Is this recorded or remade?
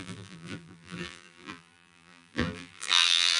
remade